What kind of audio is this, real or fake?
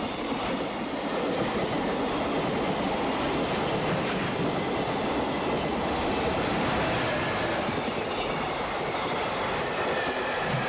real